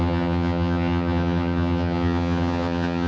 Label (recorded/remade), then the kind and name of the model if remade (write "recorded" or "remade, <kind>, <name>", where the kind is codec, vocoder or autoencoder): remade, vocoder, HiFi-GAN